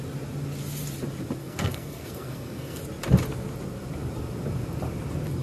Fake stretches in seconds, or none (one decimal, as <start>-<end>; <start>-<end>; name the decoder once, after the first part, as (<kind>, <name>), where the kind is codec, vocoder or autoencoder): 1.4-2.8 (codec, SNAC)